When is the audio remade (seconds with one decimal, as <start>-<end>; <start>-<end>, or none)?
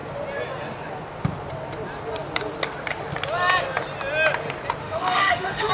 4.8-5.7